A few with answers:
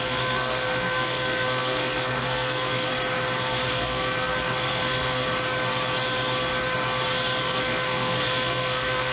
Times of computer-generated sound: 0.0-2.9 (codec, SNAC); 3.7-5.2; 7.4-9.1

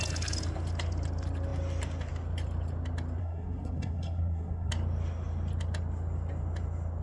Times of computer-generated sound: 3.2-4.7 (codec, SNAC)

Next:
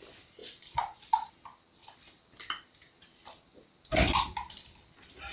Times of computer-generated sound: none